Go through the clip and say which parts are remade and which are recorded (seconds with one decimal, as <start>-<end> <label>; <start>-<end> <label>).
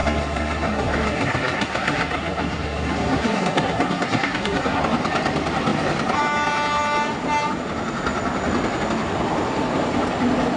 0.0-4.8 remade; 4.8-10.6 recorded